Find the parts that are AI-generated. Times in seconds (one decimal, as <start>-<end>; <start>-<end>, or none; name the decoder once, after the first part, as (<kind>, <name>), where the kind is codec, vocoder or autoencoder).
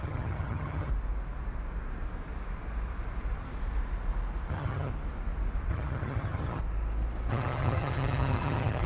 0.0-0.9 (vocoder, HiFi-GAN); 4.5-4.9; 5.7-6.6; 7.3-8.9